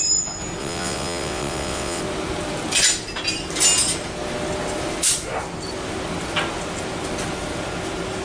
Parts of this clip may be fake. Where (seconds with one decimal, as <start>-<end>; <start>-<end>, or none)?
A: 0.6-2.0